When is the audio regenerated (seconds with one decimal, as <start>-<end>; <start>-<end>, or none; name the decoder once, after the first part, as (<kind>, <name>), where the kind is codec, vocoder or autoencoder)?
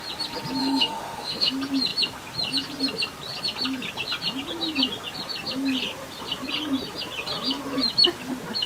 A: 0.6-1.5 (autoencoder, DAC-VAE)